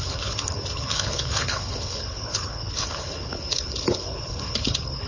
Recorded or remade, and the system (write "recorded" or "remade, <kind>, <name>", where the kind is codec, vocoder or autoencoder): remade, codec, HILCodec